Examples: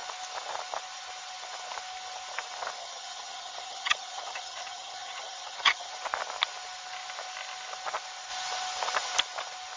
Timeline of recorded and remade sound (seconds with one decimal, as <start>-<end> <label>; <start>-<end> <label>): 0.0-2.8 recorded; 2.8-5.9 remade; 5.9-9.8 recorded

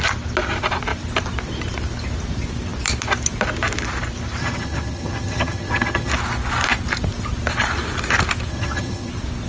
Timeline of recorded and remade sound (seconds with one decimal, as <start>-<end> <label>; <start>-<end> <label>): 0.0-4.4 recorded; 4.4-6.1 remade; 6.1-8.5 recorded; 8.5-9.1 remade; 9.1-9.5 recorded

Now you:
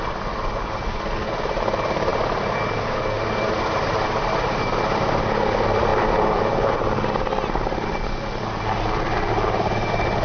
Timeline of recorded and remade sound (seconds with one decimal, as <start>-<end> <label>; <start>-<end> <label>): 0.0-10.2 recorded

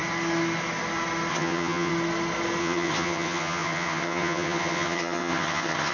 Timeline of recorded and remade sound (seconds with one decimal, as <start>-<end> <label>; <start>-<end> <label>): 0.0-1.3 recorded; 1.3-1.9 remade; 1.9-2.6 recorded; 2.6-5.9 remade

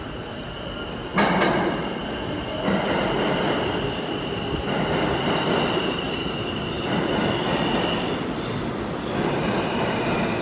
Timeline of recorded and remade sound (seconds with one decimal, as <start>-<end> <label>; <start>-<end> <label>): 0.0-10.4 recorded

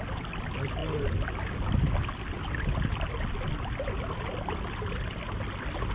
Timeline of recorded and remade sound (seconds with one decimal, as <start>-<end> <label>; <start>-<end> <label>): 0.0-5.9 recorded

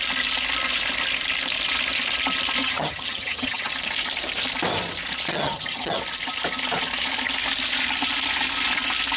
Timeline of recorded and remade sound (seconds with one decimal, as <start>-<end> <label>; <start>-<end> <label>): 0.0-2.6 recorded; 2.6-3.7 remade; 3.7-5.3 recorded; 5.3-6.0 remade; 6.0-9.2 recorded

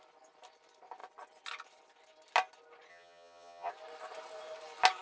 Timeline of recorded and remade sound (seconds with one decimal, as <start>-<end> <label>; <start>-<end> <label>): 0.0-2.9 recorded; 2.9-3.7 remade; 3.7-5.0 recorded